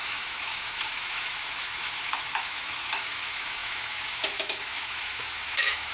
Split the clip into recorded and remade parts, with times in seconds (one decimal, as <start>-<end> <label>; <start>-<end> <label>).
0.0-5.9 remade